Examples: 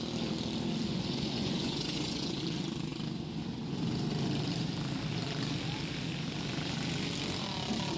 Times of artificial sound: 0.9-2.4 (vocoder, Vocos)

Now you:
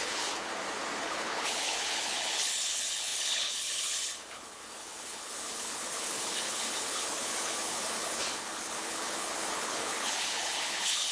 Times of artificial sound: 0.0-0.5 (codec, HILCodec); 1.0-11.1

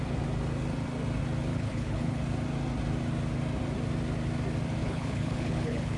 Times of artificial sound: 1.5-2.2 (codec, HILCodec); 4.8-6.0

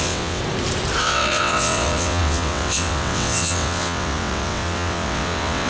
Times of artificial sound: 0.0-0.4 (vocoder, WaveNeXt); 1.0-5.7

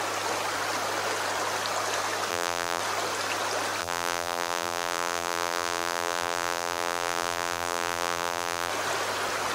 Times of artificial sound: 2.3-2.8 (vocoder, BigVGAN v2); 3.8-8.7

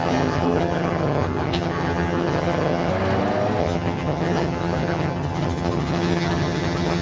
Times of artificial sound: 0.0-2.9 (vocoder, HiFi-GAN); 3.6-7.0

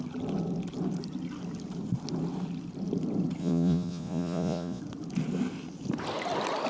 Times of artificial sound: 3.4-4.8 (vocoder, Vocos)

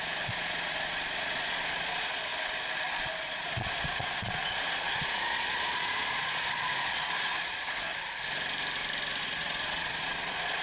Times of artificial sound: 0.0-2.3 (vocoder, Vocos); 3.1-7.9; 9.2-10.6